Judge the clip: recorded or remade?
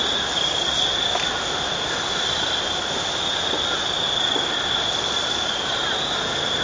recorded